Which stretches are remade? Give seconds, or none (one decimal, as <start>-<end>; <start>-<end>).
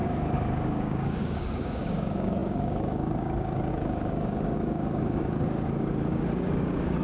0.0-7.0